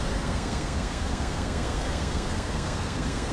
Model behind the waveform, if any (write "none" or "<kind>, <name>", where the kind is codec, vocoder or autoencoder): codec, SNAC